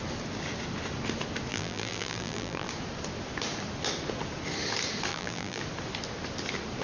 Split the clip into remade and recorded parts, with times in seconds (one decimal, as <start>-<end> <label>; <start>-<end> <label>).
0.0-1.5 recorded; 1.5-2.7 remade; 2.7-5.1 recorded; 5.1-5.6 remade; 5.6-6.8 recorded